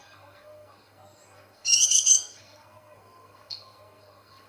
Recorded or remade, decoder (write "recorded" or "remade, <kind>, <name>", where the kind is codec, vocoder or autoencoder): remade, codec, SNAC